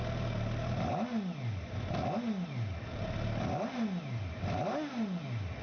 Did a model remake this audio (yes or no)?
no